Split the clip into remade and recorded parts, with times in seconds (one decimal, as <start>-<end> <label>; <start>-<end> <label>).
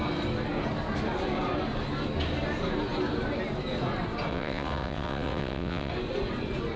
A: 0.0-4.3 recorded; 4.3-5.9 remade; 5.9-6.8 recorded